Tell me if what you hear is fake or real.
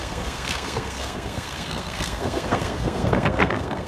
fake